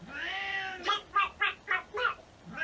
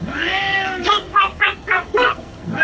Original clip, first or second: first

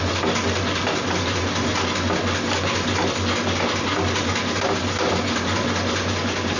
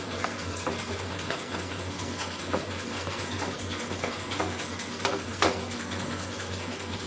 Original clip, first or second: first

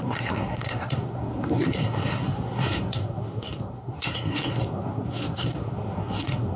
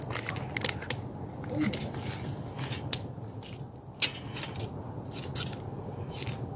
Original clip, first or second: second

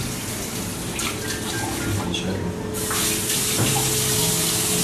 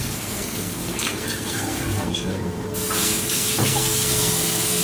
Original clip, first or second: first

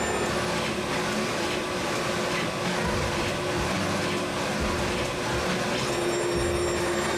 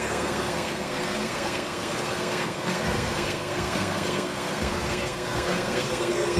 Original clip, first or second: first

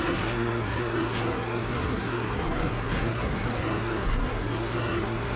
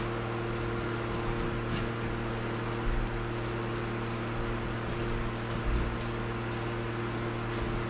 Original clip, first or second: second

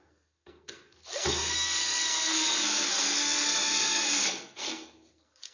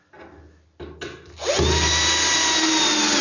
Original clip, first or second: second